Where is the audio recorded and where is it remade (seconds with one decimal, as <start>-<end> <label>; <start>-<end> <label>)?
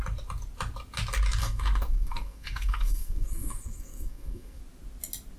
0.0-1.4 recorded; 1.4-4.6 remade; 4.6-5.4 recorded